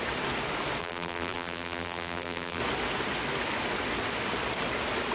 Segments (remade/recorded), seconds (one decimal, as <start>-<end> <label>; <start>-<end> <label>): 0.0-0.8 recorded; 0.8-2.6 remade; 2.6-5.1 recorded